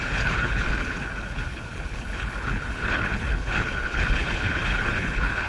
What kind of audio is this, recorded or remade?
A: remade